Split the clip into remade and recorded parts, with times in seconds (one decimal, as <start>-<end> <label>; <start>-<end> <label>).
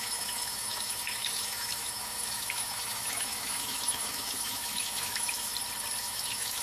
0.0-5.5 remade; 5.5-6.0 recorded; 6.0-6.6 remade